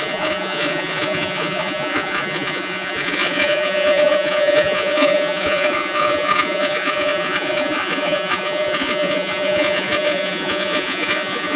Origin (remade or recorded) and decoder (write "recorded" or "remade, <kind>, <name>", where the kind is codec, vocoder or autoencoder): remade, vocoder, Vocos